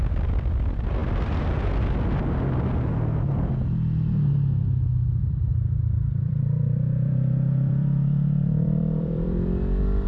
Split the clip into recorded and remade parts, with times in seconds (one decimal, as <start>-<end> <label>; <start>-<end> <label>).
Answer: 0.0-5.2 recorded; 5.2-10.1 remade